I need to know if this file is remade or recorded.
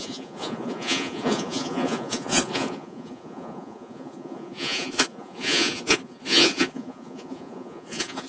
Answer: remade